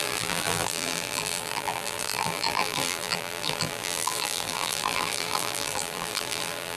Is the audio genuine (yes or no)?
no